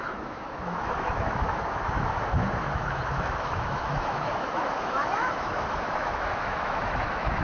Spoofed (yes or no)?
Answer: yes